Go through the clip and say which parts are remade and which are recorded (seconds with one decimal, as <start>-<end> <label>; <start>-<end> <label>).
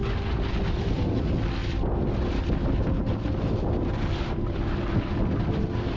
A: 0.0-6.0 recorded